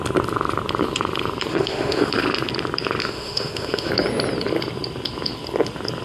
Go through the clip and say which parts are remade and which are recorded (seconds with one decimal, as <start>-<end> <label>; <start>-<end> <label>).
0.0-1.5 recorded; 1.5-2.1 remade; 2.1-3.0 recorded; 3.0-3.9 remade; 3.9-6.0 recorded